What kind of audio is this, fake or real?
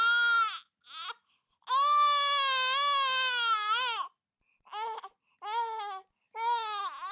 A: real